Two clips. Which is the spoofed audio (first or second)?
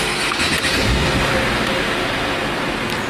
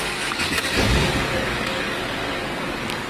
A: second